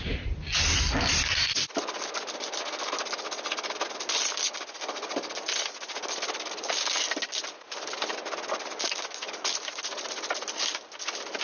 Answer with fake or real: real